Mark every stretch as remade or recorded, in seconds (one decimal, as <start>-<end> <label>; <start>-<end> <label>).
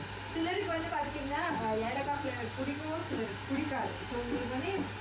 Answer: 0.0-3.0 recorded; 3.0-4.0 remade; 4.0-5.0 recorded